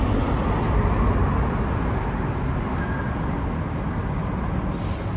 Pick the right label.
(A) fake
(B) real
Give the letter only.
B